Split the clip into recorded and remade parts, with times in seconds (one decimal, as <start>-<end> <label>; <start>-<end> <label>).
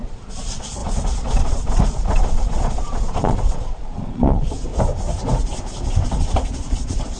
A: 0.0-4.7 remade; 4.7-6.2 recorded; 6.2-7.2 remade